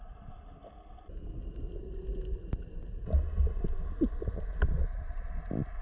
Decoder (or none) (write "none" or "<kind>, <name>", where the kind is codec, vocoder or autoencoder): none